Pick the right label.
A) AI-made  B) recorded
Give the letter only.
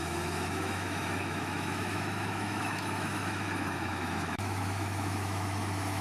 A